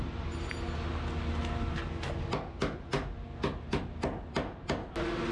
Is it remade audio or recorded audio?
recorded